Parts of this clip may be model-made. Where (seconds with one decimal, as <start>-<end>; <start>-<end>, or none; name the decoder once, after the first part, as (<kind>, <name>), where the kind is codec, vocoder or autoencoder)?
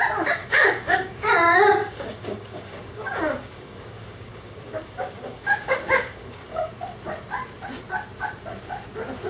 0.4-1.3 (codec, DAC); 1.8-6.7